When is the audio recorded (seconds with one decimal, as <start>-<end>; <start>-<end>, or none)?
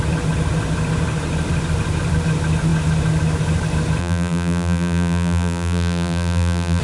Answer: 0.0-4.0